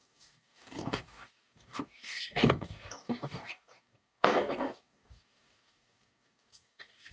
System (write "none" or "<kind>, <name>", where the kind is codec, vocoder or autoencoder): codec, DAC